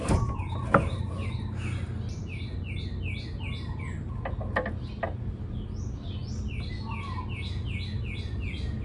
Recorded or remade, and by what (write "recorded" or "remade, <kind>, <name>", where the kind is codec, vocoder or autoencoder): recorded